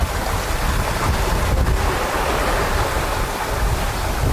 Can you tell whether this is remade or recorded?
recorded